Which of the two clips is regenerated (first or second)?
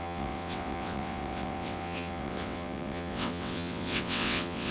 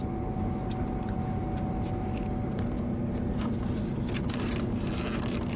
first